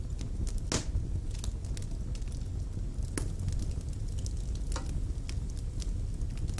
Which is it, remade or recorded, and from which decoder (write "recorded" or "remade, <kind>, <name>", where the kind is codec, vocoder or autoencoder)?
recorded